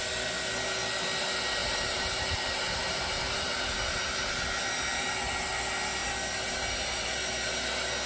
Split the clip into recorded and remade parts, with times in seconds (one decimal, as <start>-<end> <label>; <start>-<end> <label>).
0.0-1.6 recorded; 1.6-3.7 remade; 3.7-8.1 recorded

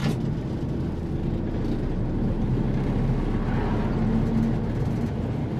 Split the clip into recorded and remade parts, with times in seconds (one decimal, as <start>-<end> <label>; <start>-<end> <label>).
0.0-5.6 recorded

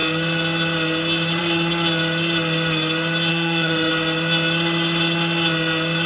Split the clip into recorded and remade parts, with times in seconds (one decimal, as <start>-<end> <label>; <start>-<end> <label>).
0.0-3.3 recorded; 3.3-3.9 remade; 3.9-6.1 recorded

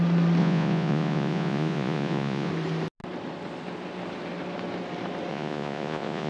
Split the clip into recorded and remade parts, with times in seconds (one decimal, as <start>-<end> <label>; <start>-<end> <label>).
0.0-0.4 recorded; 0.4-2.5 remade; 2.5-5.3 recorded; 5.3-6.3 remade

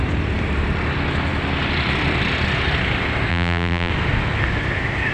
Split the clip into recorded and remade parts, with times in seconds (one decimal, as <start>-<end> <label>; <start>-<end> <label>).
0.0-3.3 recorded; 3.3-3.9 remade; 3.9-5.1 recorded

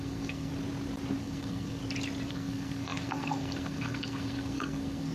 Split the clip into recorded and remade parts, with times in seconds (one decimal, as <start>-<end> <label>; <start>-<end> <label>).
0.0-0.5 remade; 0.5-1.2 recorded; 1.2-1.8 remade; 1.8-2.3 recorded; 2.3-5.1 remade

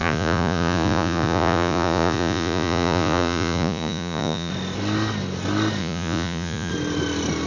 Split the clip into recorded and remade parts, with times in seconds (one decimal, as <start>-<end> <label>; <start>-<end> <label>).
0.0-4.5 remade; 4.5-5.8 recorded; 5.8-6.7 remade; 6.7-7.5 recorded

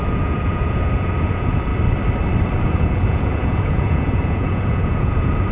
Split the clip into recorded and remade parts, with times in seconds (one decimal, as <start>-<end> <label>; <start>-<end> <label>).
0.0-1.7 remade; 1.7-2.6 recorded; 2.6-5.5 remade